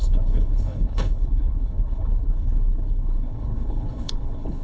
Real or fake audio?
fake